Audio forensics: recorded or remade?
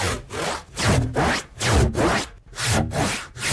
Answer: recorded